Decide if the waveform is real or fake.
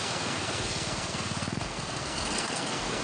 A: fake